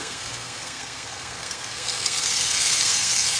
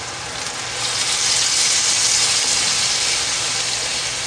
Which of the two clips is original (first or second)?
second